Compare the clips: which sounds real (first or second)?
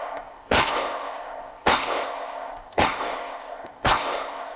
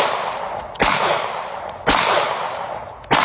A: second